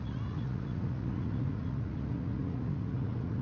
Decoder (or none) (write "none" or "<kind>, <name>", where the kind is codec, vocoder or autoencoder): vocoder, Vocos